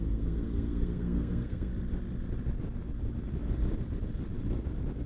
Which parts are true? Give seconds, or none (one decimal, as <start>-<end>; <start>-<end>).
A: 1.7-5.1